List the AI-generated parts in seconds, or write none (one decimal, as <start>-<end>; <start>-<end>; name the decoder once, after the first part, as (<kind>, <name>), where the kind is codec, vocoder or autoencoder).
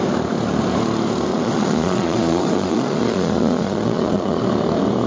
1.3-4.4 (vocoder, Vocos)